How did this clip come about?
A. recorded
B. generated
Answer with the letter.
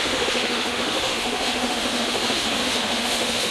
B